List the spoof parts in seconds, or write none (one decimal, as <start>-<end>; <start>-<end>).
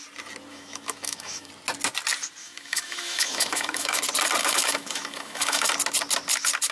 0.5-1.5; 2.4-4.0; 4.4-5.7